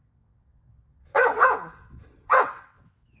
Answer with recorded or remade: remade